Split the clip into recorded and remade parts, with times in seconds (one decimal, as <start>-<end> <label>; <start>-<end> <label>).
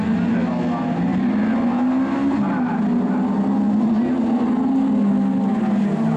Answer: 0.0-6.2 recorded